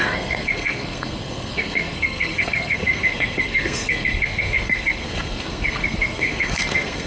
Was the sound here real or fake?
fake